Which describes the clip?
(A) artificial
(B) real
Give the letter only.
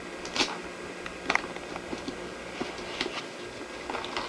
B